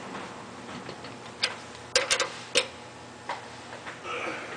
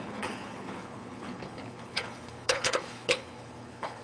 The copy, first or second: second